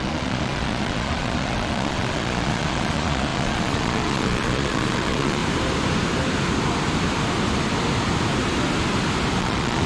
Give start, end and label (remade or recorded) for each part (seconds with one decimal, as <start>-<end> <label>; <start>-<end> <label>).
0.0-5.4 remade; 5.4-9.4 recorded; 9.4-9.9 remade